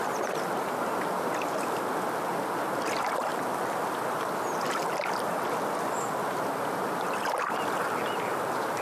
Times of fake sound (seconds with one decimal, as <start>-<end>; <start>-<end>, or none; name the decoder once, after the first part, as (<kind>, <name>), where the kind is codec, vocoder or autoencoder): none